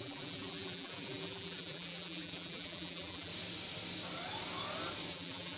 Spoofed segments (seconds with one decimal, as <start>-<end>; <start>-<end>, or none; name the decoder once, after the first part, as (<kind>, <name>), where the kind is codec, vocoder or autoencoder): 0.0-3.3 (vocoder, BigVGAN v2); 5.1-5.6